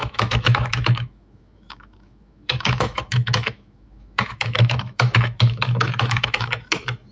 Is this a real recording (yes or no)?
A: no